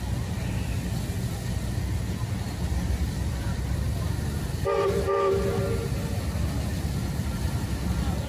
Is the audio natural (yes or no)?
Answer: yes